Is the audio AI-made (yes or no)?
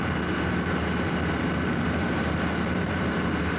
no